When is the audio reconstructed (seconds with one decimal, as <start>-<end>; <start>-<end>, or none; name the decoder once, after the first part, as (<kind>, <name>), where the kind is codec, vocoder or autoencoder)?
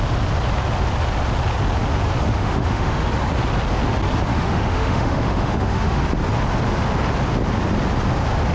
2.3-3.1 (autoencoder, DAC-VAE); 4.3-6.0